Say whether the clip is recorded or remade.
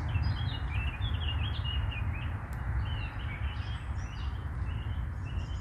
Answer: recorded